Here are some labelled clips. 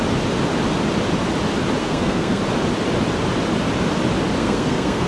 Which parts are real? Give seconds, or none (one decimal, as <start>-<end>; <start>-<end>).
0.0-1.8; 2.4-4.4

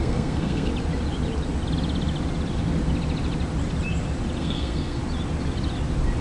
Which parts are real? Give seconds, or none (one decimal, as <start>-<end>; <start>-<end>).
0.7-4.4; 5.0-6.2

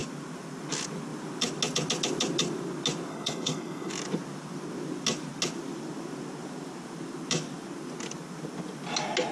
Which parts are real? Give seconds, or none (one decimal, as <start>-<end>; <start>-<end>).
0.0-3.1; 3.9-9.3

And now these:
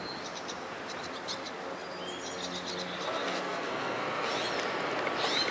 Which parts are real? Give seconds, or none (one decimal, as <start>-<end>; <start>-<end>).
0.0-3.2; 4.3-5.5

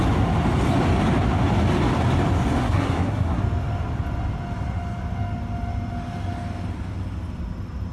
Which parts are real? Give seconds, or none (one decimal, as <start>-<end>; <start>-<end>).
0.0-2.6; 3.4-7.9

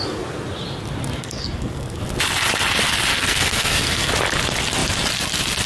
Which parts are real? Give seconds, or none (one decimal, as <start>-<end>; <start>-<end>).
0.0-1.2; 2.0-3.1; 4.1-5.7